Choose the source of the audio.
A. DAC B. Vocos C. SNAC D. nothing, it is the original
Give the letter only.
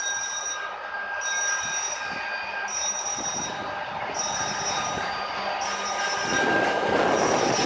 D